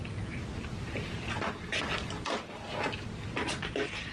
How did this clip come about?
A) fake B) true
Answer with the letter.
B